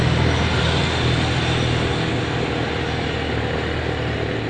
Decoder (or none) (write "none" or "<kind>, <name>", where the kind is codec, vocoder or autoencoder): none